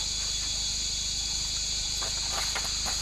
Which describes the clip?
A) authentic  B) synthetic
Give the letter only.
A